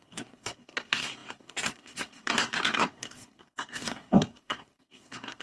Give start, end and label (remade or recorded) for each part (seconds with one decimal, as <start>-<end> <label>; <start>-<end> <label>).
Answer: 0.0-5.4 remade